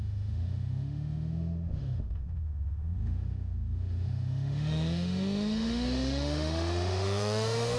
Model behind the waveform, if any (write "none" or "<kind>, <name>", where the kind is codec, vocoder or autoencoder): autoencoder, DAC-VAE